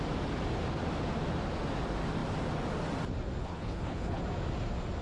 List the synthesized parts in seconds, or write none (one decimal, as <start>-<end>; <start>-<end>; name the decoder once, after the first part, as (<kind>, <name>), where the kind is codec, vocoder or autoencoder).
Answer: 3.4-4.2 (codec, HILCodec)